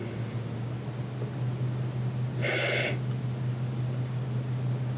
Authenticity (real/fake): real